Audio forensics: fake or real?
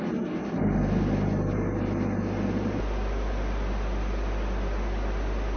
real